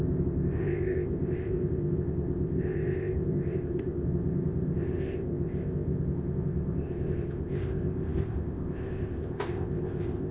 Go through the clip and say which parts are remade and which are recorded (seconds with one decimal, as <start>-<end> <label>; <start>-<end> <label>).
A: 0.0-10.3 remade